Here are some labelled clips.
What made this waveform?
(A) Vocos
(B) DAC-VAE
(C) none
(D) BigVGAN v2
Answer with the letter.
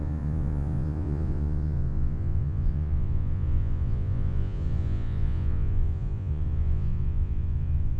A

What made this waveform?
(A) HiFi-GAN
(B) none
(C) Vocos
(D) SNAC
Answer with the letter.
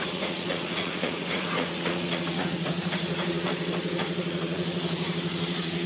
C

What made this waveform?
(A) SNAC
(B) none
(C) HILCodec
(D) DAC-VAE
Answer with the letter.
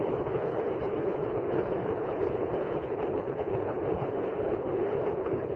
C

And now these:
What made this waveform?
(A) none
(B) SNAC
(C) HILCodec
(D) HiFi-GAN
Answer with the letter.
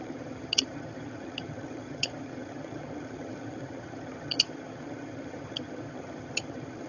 D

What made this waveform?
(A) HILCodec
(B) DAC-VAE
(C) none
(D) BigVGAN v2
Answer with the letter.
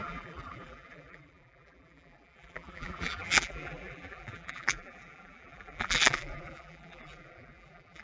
D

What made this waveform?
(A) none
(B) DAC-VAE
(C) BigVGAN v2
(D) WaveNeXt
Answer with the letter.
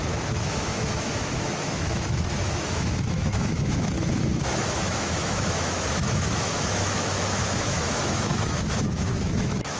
B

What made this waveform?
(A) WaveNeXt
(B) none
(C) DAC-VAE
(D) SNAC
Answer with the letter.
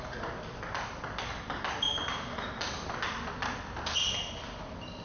B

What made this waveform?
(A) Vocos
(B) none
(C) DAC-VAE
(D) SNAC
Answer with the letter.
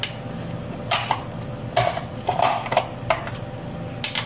B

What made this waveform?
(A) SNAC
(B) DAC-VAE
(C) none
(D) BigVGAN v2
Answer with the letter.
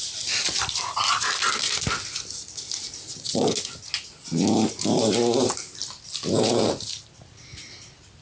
C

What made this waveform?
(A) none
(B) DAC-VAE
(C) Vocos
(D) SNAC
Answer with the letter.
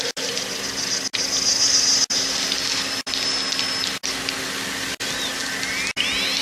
A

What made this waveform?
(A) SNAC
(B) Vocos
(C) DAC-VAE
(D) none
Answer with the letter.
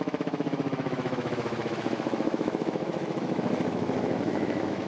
C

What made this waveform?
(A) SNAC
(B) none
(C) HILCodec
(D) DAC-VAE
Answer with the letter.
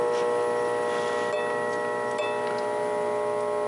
B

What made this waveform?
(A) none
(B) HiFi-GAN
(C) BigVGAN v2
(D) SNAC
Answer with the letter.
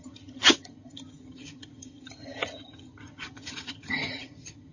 B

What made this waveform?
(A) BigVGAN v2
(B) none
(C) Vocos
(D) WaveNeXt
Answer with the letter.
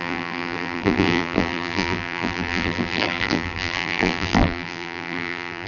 A